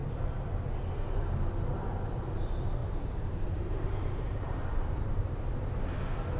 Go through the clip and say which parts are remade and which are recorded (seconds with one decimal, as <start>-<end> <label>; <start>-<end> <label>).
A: 0.0-2.8 recorded; 2.8-5.8 remade; 5.8-6.4 recorded